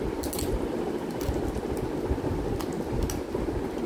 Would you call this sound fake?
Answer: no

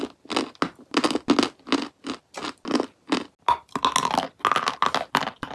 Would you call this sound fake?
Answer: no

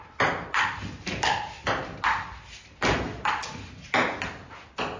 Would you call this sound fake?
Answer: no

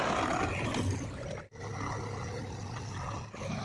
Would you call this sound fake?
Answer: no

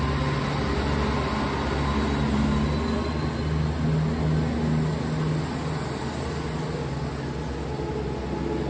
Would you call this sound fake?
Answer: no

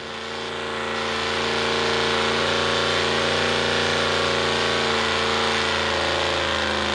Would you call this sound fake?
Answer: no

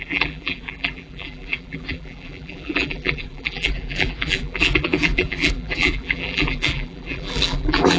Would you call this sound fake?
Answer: yes